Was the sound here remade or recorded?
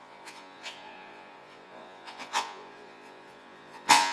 remade